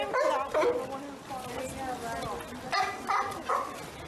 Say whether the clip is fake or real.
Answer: real